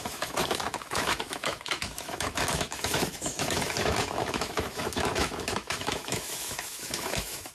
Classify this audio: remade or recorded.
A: remade